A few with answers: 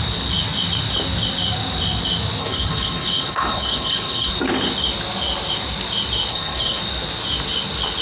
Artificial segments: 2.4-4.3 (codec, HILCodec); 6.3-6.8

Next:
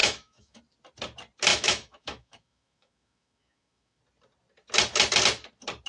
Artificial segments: 0.0-0.6 (autoencoder, DAC-VAE); 1.5-4.0

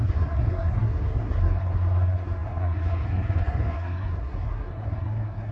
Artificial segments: 0.0-5.5 (codec, SNAC)

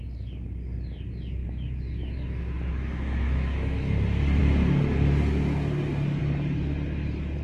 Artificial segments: 1.4-3.9 (autoencoder, DAC-VAE)

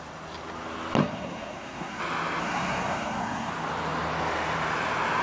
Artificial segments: 1.0-2.0 (codec, SNAC); 2.4-3.5

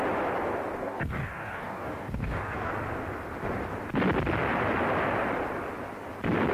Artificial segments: 0.8-2.7 (codec, DAC)

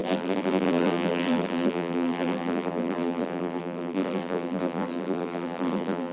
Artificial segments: 0.0-6.1 (vocoder, BigVGAN v2)